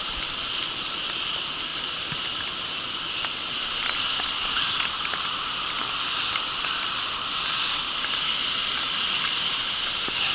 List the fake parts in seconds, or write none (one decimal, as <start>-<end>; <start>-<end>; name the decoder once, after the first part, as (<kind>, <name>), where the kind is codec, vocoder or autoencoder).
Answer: none